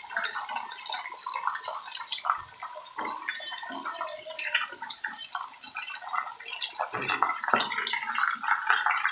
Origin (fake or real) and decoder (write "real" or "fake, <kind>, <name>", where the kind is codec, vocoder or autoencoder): real